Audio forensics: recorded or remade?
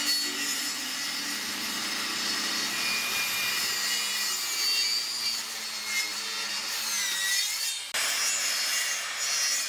recorded